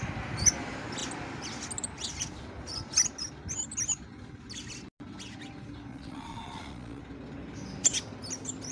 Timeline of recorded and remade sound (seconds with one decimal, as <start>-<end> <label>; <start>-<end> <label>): 0.0-5.9 recorded; 5.9-7.0 remade; 7.0-8.7 recorded